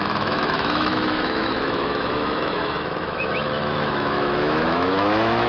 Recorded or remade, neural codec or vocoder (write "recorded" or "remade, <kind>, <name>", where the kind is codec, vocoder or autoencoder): remade, autoencoder, DAC-VAE